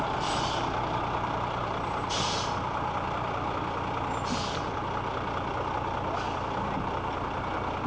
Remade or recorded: recorded